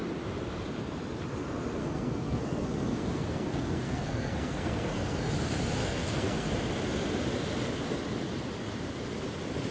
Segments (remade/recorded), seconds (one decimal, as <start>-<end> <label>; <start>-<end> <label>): 0.0-1.8 recorded; 1.8-5.3 remade; 5.3-5.8 recorded; 5.8-6.5 remade; 6.5-9.7 recorded